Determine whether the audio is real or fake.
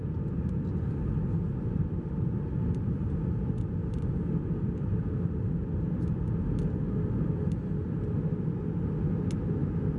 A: real